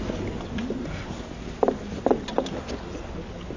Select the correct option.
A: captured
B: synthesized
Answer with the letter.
A